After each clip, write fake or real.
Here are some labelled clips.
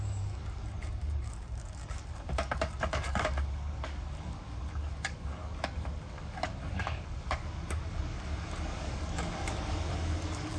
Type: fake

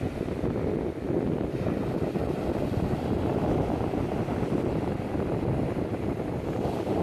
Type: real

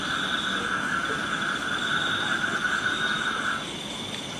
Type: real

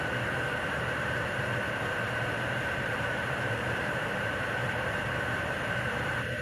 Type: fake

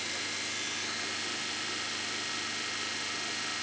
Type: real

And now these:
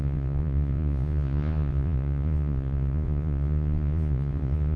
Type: fake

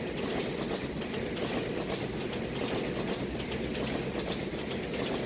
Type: real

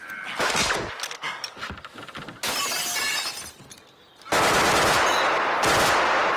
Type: real